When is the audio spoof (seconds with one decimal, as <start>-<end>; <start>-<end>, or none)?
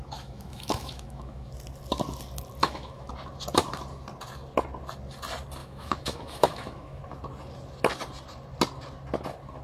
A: 0.0-1.5; 2.6-3.1; 5.6-7.0